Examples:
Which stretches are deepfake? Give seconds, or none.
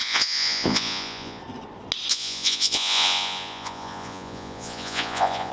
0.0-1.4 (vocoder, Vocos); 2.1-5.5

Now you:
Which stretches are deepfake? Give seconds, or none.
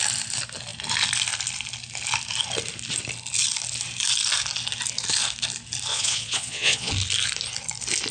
5.9-6.9 (vocoder, Vocos)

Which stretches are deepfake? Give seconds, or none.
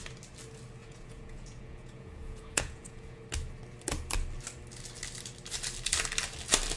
0.8-3.2 (vocoder, Vocos)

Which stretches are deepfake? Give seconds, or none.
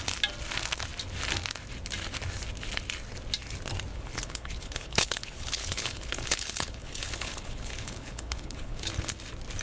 3.9-8.9 (codec, HILCodec)